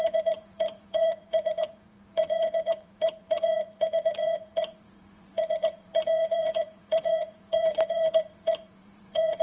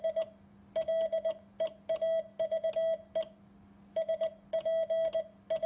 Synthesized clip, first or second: first